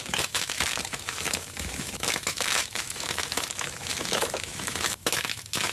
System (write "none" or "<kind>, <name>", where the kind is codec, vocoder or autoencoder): autoencoder, DAC-VAE